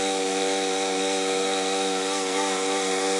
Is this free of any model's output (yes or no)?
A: no